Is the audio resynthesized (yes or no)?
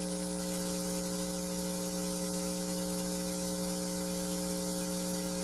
yes